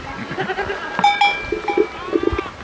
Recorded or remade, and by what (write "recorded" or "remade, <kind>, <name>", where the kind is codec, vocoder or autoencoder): recorded